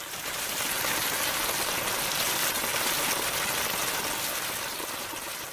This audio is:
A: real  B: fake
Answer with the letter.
A